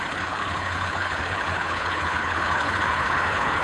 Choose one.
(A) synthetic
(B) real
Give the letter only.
A